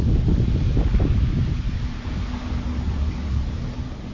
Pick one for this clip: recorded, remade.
recorded